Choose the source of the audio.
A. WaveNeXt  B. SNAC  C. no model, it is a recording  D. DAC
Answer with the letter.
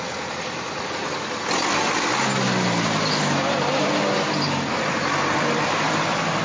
C